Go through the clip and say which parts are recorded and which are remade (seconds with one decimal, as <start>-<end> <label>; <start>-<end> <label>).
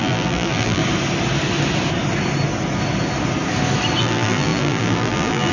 0.0-0.8 remade; 0.8-4.0 recorded; 4.0-5.5 remade